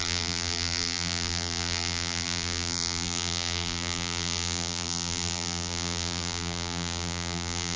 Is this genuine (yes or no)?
no